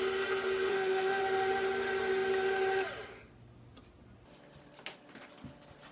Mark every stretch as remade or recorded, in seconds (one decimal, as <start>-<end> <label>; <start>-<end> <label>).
0.0-0.7 recorded; 0.7-1.2 remade; 1.2-5.9 recorded